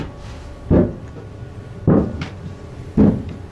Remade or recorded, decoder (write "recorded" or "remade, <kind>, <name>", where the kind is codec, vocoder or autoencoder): recorded